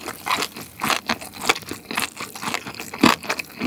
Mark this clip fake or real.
real